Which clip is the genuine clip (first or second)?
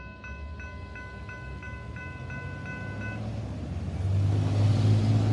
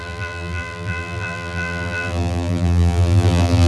first